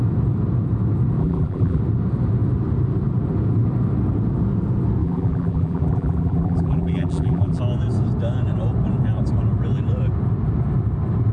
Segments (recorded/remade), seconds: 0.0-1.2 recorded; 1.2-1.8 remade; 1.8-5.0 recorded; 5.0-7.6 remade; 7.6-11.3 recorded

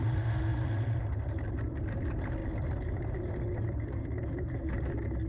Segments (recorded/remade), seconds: 0.0-5.3 recorded

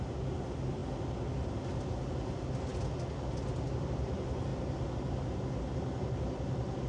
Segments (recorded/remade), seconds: 0.0-6.9 recorded

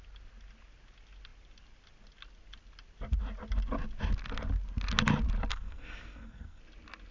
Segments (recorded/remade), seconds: 0.0-5.5 recorded; 5.5-6.6 remade; 6.6-7.1 recorded

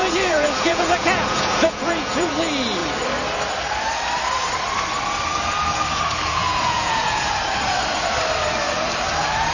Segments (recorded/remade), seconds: 0.0-2.3 remade; 2.3-6.4 recorded; 6.4-7.3 remade; 7.3-9.5 recorded

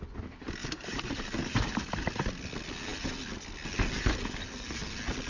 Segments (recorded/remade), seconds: 0.0-0.6 recorded; 0.6-2.3 remade; 2.3-5.3 recorded